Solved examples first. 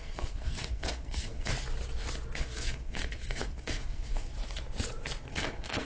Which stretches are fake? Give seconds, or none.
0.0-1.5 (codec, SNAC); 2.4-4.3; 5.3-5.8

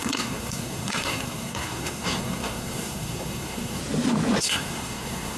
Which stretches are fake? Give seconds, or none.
0.0-3.8 (codec, SNAC); 4.4-5.4